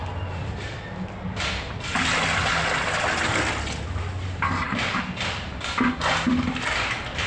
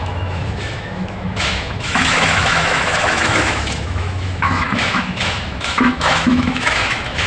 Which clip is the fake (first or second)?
second